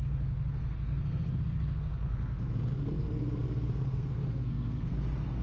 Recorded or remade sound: remade